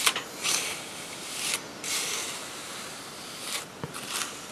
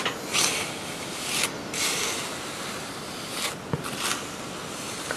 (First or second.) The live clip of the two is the second